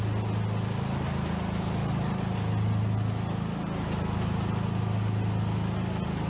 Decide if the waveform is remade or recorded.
recorded